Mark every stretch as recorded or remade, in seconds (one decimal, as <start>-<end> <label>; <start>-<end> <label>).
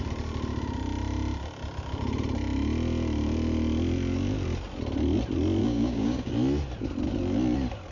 0.0-5.6 recorded; 5.6-6.3 remade; 6.3-7.9 recorded